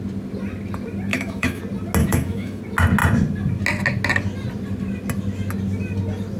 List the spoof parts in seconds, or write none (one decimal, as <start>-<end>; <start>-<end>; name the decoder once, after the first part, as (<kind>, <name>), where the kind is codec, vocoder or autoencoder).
1.1-1.6 (autoencoder, DAC-VAE); 2.0-2.6